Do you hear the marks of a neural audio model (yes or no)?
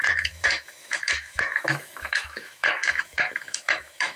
yes